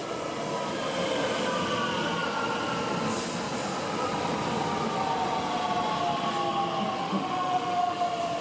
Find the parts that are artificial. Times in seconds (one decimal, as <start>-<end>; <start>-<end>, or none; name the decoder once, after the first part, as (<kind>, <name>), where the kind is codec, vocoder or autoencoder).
7.0-8.0 (autoencoder, DAC-VAE)